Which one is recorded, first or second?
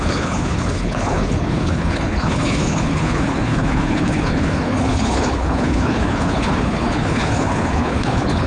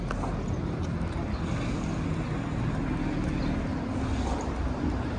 second